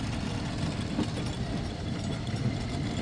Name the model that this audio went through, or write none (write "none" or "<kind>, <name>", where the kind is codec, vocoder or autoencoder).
none